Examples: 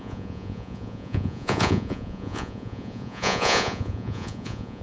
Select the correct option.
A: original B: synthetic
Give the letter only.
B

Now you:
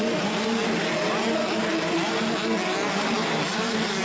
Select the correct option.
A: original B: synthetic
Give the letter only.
A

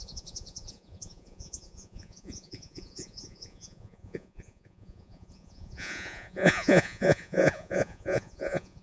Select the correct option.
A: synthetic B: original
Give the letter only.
A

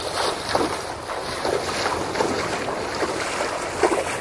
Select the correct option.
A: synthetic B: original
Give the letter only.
B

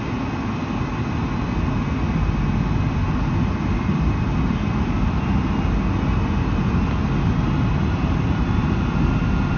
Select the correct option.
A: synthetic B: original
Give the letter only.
B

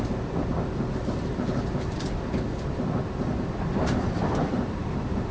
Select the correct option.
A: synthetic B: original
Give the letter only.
B